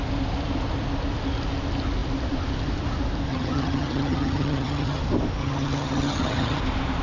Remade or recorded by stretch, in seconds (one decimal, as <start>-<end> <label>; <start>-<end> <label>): 0.0-3.3 recorded; 3.3-5.0 remade; 5.0-5.4 recorded; 5.4-6.6 remade; 6.6-7.0 recorded